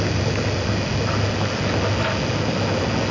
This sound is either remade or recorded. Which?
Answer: recorded